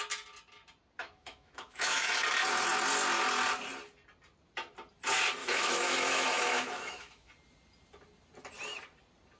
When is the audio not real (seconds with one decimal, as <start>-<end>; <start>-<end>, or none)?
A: 1.0-2.1; 5.4-7.3